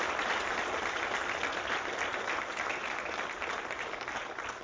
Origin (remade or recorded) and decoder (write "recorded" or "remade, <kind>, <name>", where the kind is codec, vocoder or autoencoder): recorded